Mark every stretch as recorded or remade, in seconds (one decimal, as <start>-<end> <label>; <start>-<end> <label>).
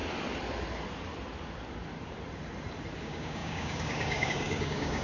0.0-3.0 recorded; 3.0-5.0 remade